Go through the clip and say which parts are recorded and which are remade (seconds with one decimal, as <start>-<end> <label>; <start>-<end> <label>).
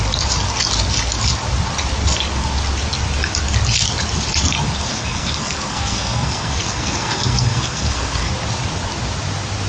0.0-4.9 recorded; 4.9-8.3 remade; 8.3-9.7 recorded